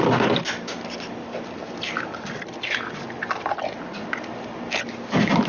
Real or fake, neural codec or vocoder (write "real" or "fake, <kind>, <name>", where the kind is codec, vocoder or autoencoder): real